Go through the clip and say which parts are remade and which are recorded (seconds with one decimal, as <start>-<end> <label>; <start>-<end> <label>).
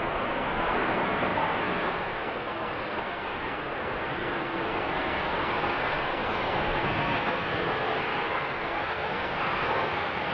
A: 0.0-10.3 remade